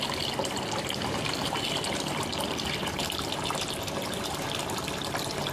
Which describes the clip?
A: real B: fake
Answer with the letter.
A